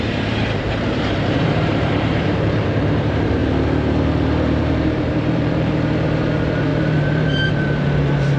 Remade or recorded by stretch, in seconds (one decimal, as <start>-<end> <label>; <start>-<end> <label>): 0.0-3.4 remade; 3.4-4.6 recorded; 4.6-8.4 remade